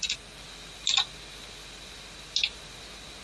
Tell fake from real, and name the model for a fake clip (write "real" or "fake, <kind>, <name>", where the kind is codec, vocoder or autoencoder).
real